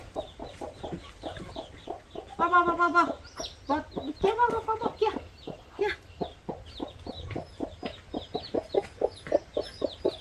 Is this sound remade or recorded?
recorded